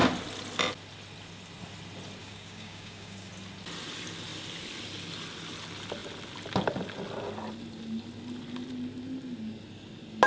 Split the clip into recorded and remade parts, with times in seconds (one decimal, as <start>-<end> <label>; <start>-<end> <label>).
0.0-2.2 recorded; 2.2-3.3 remade; 3.3-10.3 recorded